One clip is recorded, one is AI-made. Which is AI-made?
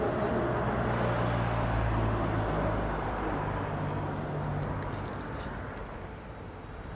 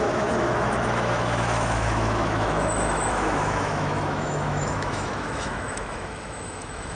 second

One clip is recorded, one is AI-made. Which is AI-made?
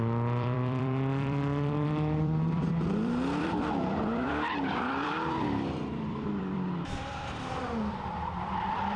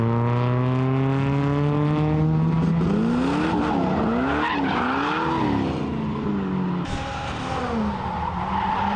first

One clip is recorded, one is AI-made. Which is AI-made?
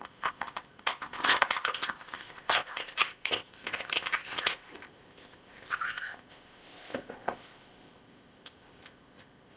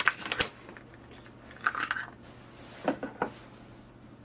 first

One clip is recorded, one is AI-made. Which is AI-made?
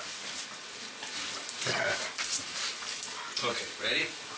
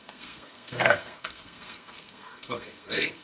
second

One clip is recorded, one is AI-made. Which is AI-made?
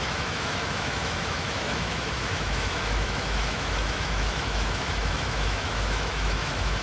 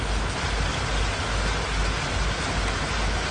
first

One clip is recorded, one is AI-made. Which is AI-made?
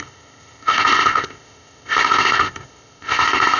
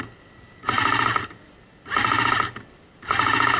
first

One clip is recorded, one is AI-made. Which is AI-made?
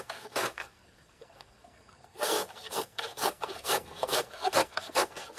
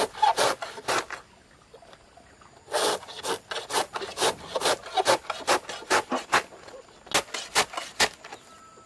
first